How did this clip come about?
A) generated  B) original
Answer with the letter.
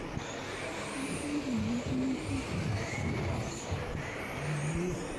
B